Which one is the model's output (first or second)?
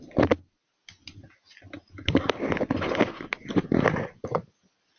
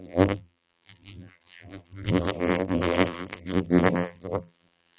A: second